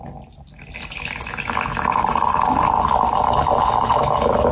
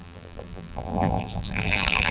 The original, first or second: first